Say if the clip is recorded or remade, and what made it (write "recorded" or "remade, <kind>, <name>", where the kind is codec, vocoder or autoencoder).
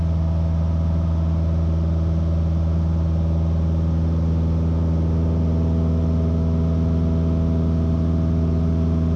recorded